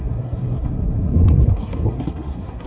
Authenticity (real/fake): fake